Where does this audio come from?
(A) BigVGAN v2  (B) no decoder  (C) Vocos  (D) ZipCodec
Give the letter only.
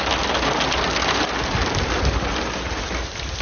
B